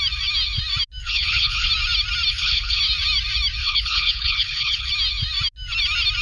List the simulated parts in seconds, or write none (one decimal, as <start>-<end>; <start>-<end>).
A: 1.0-1.7; 2.3-2.8; 3.6-4.9